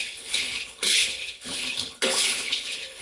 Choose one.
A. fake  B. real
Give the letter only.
A